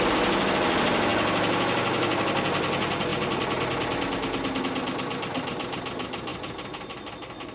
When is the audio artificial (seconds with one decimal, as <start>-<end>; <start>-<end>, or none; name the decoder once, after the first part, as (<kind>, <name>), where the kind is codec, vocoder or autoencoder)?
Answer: none

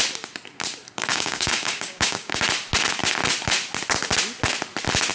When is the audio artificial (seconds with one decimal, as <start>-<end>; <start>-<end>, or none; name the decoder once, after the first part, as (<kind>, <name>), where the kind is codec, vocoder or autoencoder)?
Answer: 1.1-2.4 (codec, DAC)

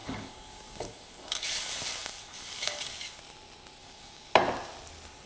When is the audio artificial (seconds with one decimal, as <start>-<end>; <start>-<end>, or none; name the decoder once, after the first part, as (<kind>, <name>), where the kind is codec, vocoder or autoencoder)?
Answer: 0.0-3.2 (codec, DAC); 3.8-4.3

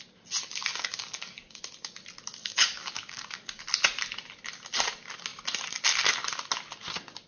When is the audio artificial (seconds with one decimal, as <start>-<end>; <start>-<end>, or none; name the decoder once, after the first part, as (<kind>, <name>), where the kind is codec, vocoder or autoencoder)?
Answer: 0.7-1.6 (codec, DAC); 2.4-3.6

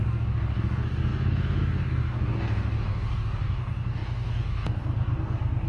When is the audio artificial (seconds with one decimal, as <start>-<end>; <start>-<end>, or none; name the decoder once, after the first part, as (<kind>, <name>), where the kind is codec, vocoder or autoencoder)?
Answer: 0.0-5.7 (codec, DAC)

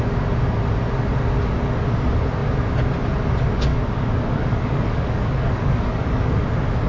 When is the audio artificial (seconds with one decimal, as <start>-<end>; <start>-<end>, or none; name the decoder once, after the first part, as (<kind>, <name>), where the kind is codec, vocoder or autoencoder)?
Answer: 3.7-6.4 (codec, DAC)

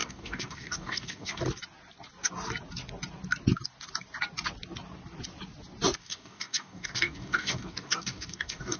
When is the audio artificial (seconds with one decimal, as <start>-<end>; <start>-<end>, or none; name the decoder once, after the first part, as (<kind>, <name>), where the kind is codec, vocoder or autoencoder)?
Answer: 0.0-1.4 (codec, DAC); 6.0-8.8